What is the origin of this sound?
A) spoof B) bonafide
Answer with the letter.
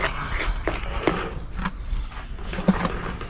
B